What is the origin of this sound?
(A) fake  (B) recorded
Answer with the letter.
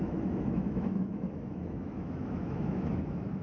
A